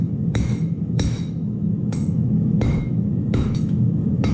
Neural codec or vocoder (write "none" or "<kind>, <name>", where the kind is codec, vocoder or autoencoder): autoencoder, DAC-VAE